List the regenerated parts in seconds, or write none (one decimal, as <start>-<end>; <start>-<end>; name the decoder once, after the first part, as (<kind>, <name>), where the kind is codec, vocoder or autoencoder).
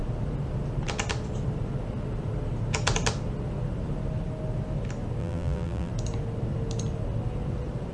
5.2-5.9 (vocoder, BigVGAN v2)